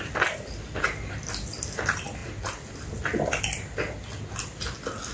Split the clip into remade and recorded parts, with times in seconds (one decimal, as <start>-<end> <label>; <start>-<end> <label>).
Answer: 0.0-5.1 recorded

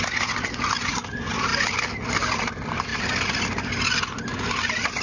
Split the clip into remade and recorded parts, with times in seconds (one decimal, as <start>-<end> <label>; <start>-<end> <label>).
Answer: 0.0-5.0 recorded

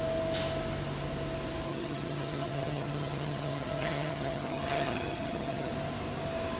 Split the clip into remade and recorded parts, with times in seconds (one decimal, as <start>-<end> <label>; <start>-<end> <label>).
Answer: 0.0-1.7 recorded; 1.7-5.7 remade; 5.7-6.6 recorded

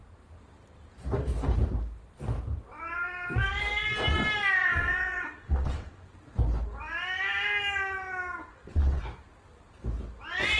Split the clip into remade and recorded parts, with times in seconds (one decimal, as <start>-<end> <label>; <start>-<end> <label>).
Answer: 0.0-4.6 recorded; 4.6-6.0 remade; 6.0-8.5 recorded; 8.5-9.0 remade; 9.0-10.6 recorded

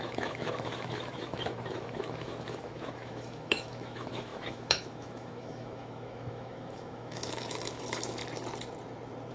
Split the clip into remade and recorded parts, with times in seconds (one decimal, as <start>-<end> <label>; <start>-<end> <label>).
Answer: 0.0-8.2 remade; 8.2-9.3 recorded

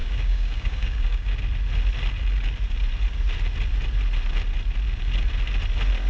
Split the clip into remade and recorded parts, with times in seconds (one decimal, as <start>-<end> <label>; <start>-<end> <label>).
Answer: 0.0-1.3 remade; 1.3-6.1 recorded

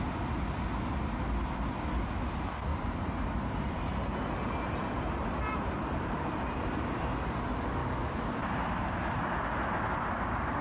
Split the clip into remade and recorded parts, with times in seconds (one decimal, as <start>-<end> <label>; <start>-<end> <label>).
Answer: 0.0-2.7 recorded; 2.7-7.3 remade; 7.3-7.8 recorded; 7.8-8.9 remade; 8.9-10.6 recorded